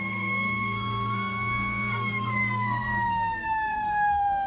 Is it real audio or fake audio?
fake